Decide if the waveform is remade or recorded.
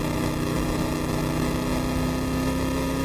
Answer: remade